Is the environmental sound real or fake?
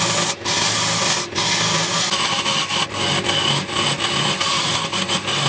real